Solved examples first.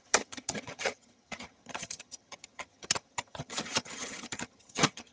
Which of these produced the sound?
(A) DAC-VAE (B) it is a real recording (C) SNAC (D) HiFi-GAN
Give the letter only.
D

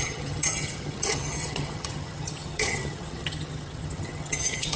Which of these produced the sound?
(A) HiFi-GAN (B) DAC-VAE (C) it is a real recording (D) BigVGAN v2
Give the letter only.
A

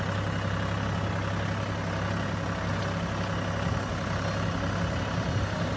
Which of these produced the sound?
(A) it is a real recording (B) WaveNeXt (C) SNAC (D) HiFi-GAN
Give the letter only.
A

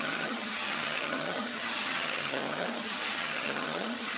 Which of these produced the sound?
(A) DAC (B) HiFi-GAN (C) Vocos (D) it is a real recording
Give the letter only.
B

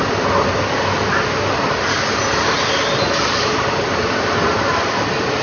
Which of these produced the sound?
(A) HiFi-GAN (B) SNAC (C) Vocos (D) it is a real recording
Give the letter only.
D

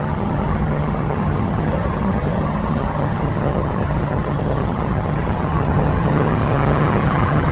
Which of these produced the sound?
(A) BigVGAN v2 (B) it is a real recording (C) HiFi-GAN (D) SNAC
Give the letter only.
C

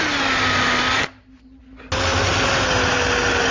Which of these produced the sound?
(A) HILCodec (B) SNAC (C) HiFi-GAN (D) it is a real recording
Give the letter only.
D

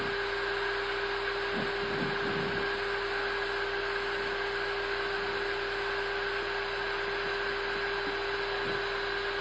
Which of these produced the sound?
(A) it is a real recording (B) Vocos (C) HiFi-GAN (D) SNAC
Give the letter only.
A